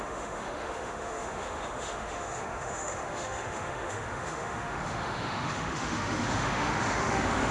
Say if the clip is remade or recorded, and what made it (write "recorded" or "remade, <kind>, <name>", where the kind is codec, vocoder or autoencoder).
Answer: remade, autoencoder, DAC-VAE